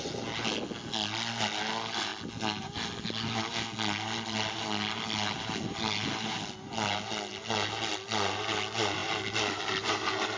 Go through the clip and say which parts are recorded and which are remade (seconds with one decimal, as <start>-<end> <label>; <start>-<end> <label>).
0.0-10.4 recorded